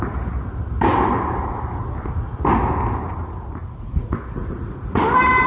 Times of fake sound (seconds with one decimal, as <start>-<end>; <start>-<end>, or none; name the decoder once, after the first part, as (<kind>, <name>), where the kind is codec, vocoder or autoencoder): 3.6-5.0 (vocoder, Vocos)